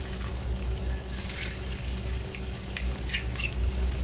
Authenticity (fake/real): fake